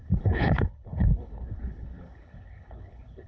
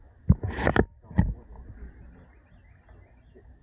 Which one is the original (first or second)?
second